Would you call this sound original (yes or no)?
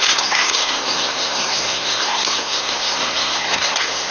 no